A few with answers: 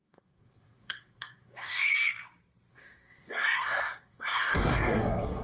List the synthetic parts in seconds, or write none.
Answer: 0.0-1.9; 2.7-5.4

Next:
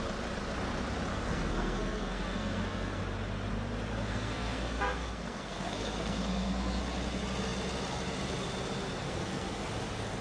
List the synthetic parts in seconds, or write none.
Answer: 1.1-3.0; 3.9-6.8; 9.0-9.7